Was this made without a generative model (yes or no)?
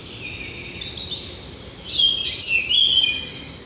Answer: yes